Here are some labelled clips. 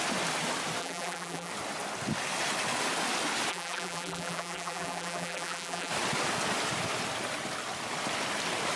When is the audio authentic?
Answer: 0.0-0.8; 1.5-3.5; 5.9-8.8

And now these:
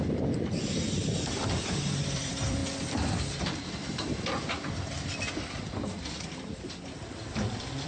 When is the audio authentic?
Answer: 2.6-7.1

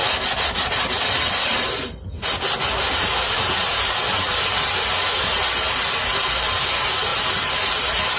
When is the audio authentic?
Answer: 1.3-2.2; 5.7-8.2

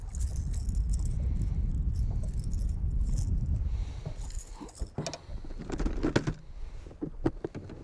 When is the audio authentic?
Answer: 0.0-5.3; 6.0-7.8

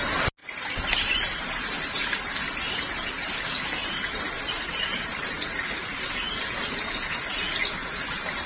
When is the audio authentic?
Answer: 0.0-0.4; 2.3-3.8; 6.9-8.5